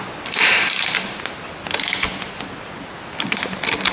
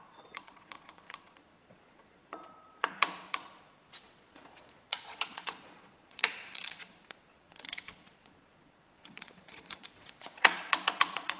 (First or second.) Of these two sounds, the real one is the first